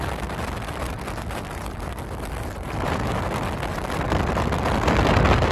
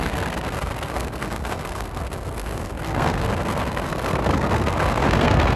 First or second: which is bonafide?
first